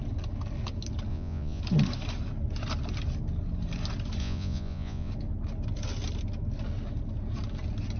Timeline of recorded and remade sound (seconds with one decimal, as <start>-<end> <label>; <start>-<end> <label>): 0.0-1.1 recorded; 1.1-1.6 remade; 1.6-4.2 recorded; 4.2-5.1 remade; 5.1-8.0 recorded